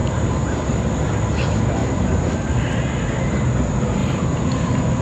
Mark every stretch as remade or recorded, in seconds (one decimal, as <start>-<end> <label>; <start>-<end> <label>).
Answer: 0.0-0.6 remade; 0.6-1.8 recorded; 1.8-2.6 remade; 2.6-4.0 recorded; 4.0-5.0 remade